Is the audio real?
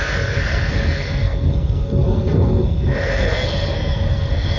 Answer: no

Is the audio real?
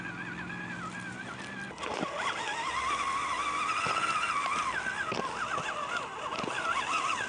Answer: yes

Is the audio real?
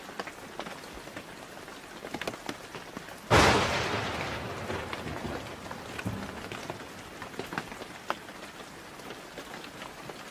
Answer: yes